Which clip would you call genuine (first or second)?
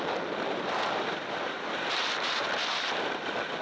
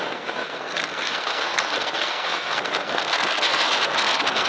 first